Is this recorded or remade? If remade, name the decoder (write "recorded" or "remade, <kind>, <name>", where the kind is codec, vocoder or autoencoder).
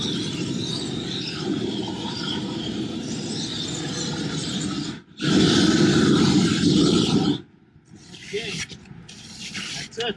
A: remade, vocoder, BigVGAN v2